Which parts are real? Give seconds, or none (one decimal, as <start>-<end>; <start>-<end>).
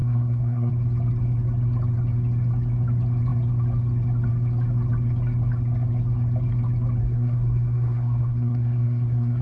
0.7-7.0